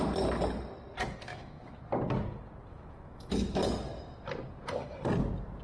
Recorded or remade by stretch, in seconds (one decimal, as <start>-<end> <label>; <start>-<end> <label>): 0.0-1.3 recorded; 1.3-1.8 remade; 1.8-2.7 recorded; 2.7-3.6 remade; 3.6-5.6 recorded